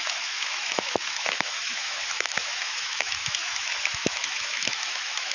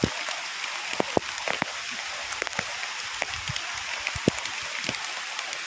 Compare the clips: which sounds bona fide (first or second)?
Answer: second